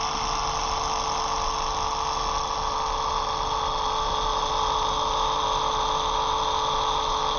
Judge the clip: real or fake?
real